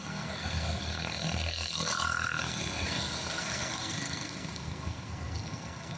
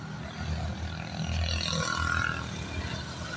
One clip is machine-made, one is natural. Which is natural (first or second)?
second